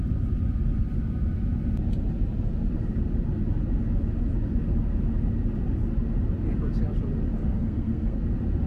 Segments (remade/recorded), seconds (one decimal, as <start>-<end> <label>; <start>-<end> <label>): 0.0-7.4 recorded; 7.4-8.2 remade; 8.2-8.7 recorded